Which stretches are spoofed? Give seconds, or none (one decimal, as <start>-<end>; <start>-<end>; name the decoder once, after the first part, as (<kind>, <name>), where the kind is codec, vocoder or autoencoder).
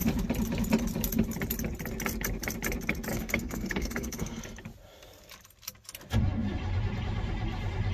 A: 3.1-4.4 (codec, SNAC)